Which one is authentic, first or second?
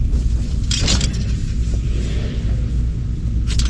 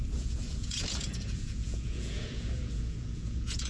first